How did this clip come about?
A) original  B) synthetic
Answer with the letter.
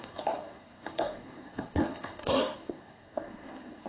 B